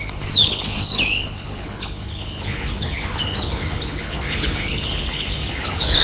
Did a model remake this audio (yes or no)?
yes